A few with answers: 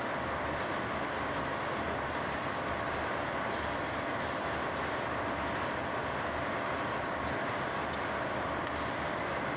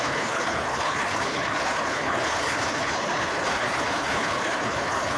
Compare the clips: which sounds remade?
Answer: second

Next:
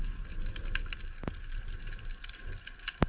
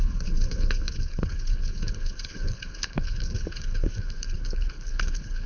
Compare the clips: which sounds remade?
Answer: second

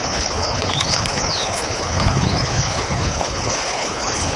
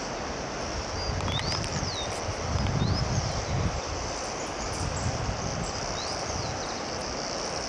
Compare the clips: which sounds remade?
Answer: first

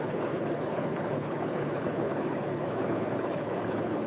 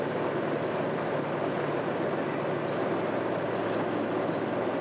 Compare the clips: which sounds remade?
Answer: first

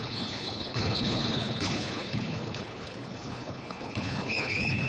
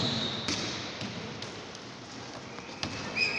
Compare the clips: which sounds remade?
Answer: first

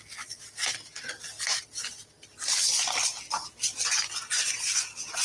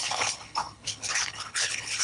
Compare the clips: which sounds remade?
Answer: second